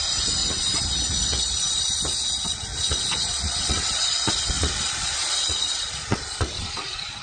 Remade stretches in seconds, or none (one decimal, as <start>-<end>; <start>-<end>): 0.4-1.8; 2.7-7.2